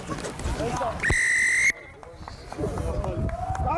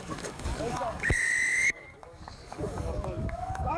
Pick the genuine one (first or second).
first